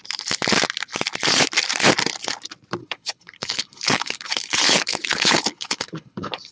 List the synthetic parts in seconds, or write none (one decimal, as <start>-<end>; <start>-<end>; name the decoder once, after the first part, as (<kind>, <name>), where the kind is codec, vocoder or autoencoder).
2.8-6.5 (codec, HILCodec)